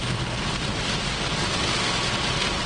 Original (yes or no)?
yes